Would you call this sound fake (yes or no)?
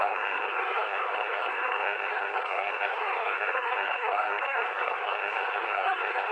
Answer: yes